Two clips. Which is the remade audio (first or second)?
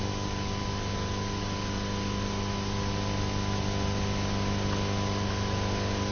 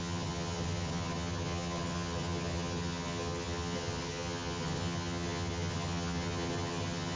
second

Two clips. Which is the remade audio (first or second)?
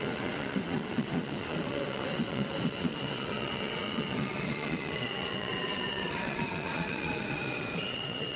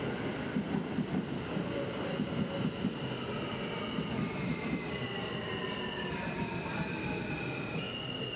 first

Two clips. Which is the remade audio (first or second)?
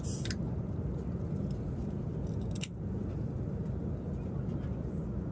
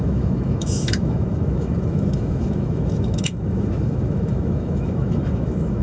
second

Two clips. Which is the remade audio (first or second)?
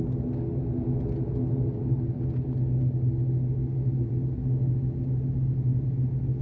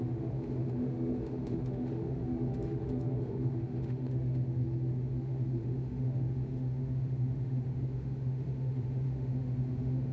second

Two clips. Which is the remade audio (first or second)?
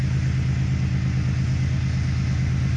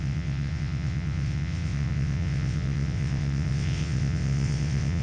second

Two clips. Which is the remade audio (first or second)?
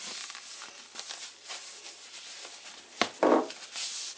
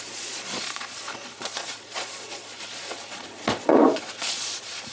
second